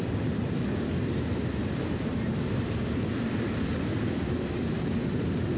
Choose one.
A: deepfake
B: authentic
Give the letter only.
A